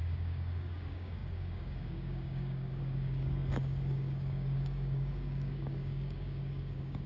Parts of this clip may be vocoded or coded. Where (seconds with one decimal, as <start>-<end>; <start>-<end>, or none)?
0.0-7.1